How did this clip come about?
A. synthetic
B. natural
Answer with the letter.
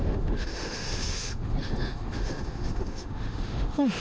A